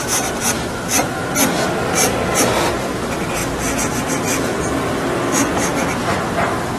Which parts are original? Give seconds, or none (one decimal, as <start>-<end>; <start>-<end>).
0.0-6.8